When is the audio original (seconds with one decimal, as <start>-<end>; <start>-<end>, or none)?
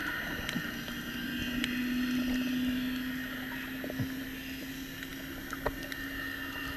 0.0-6.8